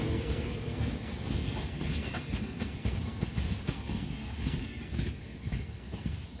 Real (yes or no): no